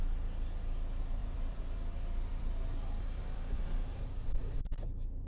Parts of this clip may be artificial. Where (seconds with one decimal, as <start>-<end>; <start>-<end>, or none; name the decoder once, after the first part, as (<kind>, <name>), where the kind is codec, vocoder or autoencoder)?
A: 1.2-3.5 (vocoder, BigVGAN v2)